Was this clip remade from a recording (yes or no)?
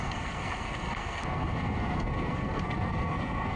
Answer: yes